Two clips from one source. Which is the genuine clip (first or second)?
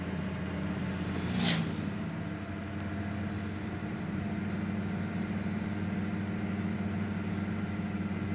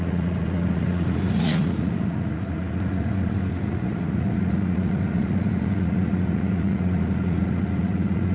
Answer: first